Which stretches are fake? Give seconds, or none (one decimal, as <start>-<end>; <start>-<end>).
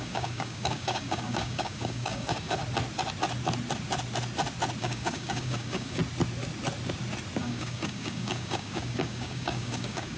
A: 0.0-2.6; 4.8-6.0; 7.4-10.2